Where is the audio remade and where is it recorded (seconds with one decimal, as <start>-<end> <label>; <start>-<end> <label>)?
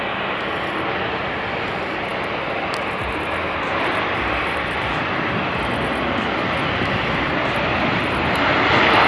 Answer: 0.0-9.1 recorded